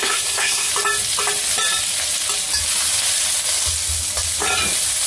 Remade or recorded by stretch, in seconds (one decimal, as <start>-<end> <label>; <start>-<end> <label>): 0.0-0.7 remade; 0.7-5.1 recorded